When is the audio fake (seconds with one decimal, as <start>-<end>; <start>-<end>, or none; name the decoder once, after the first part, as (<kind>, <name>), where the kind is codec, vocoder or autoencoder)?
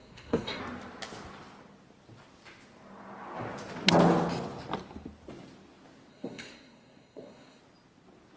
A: 0.0-0.6 (codec, SNAC); 6.1-7.6